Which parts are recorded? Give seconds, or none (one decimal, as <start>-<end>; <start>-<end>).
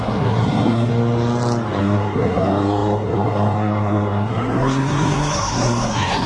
0.9-1.8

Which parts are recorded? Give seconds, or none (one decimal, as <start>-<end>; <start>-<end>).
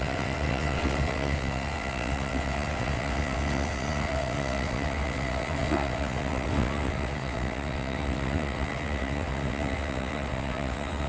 none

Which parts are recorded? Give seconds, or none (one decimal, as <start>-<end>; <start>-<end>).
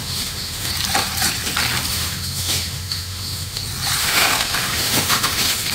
0.7-1.9; 3.6-4.0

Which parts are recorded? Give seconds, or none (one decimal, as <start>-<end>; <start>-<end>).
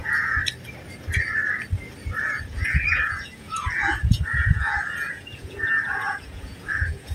0.4-2.2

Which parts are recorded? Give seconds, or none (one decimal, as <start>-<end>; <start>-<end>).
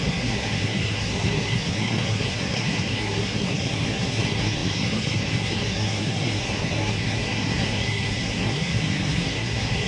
none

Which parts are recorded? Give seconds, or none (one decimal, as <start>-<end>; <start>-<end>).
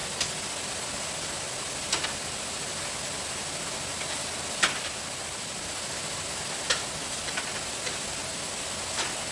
0.0-9.3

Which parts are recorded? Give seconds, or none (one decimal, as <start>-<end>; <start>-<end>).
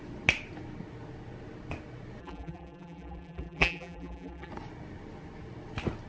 0.0-2.2; 4.5-6.1